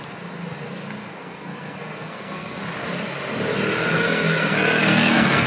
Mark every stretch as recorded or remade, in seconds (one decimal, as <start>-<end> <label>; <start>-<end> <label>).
0.0-1.1 recorded; 1.1-2.6 remade; 2.6-3.9 recorded; 3.9-5.5 remade